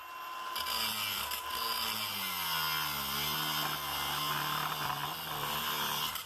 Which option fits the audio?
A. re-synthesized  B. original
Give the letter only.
B